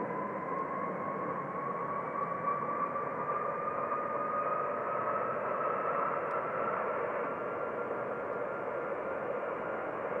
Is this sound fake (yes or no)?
no